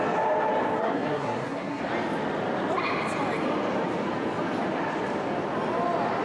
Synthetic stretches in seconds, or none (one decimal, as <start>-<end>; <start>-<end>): 0.8-1.8